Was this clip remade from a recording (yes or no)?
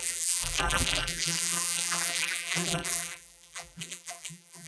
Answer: yes